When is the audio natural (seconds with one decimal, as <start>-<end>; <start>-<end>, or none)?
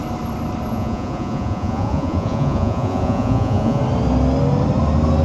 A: 0.0-0.7; 3.8-5.2